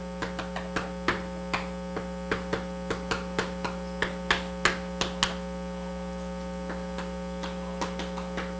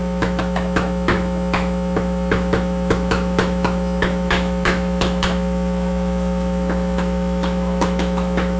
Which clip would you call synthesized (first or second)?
second